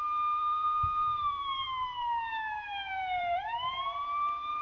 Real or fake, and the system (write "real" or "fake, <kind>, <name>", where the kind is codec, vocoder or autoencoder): fake, vocoder, BigVGAN v2